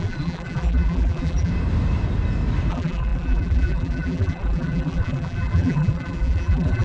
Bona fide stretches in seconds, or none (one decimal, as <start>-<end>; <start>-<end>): 1.5-2.7